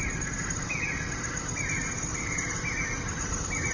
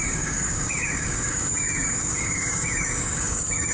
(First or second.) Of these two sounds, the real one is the first